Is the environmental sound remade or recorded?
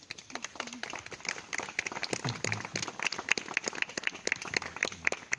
recorded